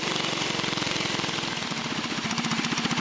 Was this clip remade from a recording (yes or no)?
yes